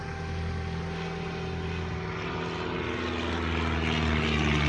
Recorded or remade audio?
recorded